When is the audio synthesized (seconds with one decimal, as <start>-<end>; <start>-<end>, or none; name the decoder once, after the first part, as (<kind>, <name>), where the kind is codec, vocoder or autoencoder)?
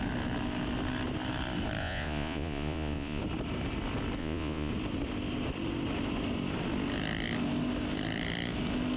1.8-3.2 (vocoder, Vocos); 4.2-4.7